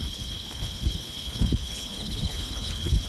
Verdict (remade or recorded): remade